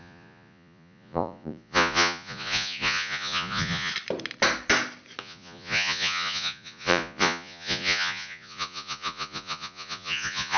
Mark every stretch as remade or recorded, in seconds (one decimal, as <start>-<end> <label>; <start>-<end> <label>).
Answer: 0.0-3.9 remade; 3.9-5.2 recorded; 5.2-10.6 remade